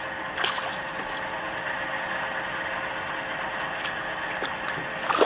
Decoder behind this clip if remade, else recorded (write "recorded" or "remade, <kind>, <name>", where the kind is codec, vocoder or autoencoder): recorded